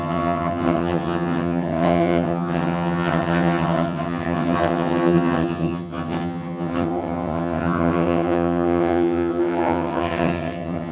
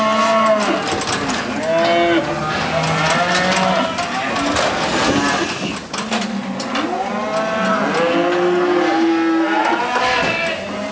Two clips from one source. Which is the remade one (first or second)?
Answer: first